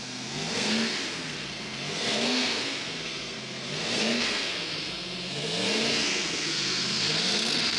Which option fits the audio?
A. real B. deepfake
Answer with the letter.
B